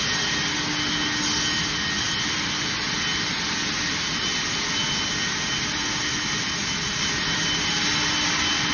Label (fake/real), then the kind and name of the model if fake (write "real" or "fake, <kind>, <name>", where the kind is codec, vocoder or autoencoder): real